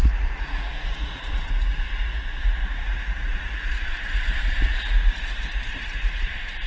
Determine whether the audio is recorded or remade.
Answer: remade